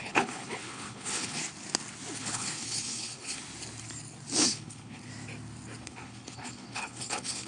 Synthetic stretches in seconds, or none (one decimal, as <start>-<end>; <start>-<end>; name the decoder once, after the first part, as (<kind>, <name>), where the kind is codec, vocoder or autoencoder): 0.0-1.4 (codec, HILCodec); 2.2-3.4; 4.4-5.1; 5.8-7.5